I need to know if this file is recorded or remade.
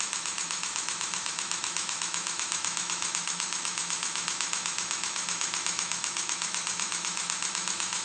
remade